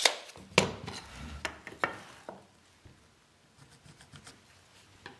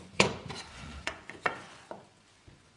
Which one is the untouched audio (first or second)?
first